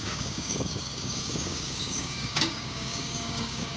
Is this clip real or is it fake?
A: fake